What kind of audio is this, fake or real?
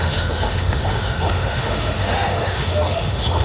fake